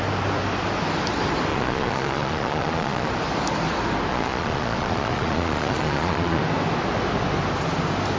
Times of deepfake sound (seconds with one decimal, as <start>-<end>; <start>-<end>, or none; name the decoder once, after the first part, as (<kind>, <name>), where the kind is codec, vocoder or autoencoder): 1.5-3.1 (vocoder, Vocos); 4.1-6.4